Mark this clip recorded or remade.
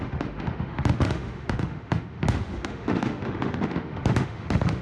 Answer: remade